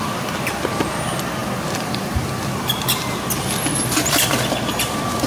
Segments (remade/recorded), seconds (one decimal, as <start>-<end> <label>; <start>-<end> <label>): 0.0-5.3 recorded

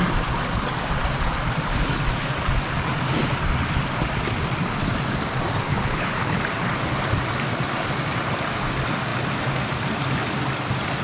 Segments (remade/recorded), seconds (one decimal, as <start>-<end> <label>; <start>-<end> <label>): 0.0-5.7 recorded; 5.7-6.4 remade; 6.4-11.0 recorded

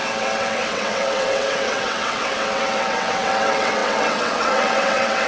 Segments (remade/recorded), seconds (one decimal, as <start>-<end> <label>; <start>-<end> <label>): 0.0-5.3 remade

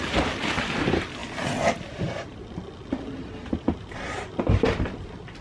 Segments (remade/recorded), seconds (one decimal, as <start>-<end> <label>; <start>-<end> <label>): 0.0-5.4 recorded

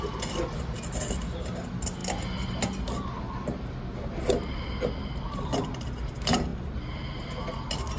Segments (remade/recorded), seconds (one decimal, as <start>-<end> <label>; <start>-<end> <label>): 0.0-8.0 recorded

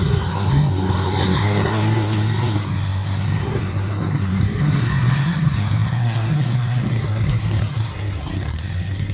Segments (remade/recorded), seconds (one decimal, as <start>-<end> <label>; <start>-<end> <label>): 0.0-9.1 remade

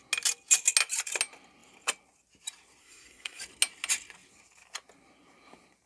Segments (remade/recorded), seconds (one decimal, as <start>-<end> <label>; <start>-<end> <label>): 0.0-2.8 recorded; 2.8-3.4 remade; 3.4-5.9 recorded

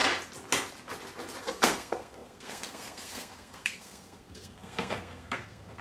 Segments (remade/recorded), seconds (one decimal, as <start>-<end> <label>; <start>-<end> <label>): 0.0-1.4 recorded; 1.4-5.8 remade